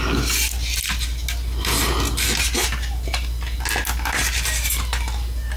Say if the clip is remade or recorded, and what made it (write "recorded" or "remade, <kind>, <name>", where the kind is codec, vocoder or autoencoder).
recorded